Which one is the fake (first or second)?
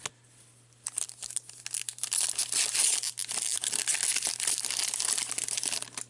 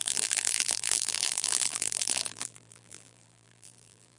second